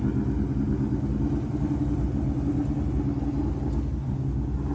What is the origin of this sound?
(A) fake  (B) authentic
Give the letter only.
B